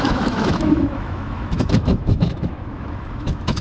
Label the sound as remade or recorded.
remade